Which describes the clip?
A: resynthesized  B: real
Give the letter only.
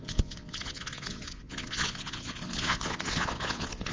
A